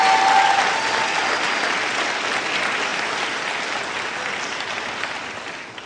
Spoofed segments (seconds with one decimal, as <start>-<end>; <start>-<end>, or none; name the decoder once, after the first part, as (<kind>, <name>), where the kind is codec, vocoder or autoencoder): none